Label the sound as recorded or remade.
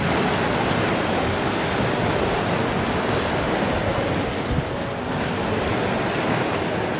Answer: recorded